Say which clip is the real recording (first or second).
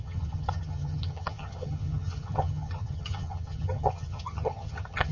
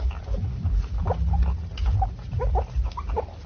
second